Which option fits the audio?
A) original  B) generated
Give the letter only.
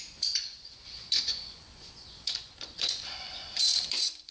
B